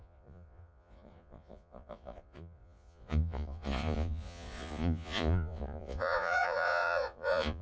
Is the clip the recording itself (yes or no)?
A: no